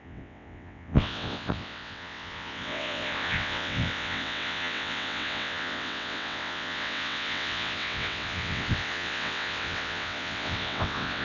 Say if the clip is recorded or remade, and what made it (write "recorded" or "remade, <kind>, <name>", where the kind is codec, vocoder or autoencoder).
remade, vocoder, WaveNeXt